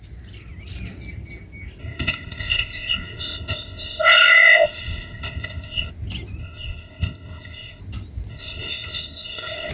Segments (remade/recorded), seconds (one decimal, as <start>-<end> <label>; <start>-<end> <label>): 0.0-1.8 recorded; 1.8-5.9 remade; 5.9-6.4 recorded; 6.4-7.8 remade; 7.8-8.3 recorded; 8.3-9.7 remade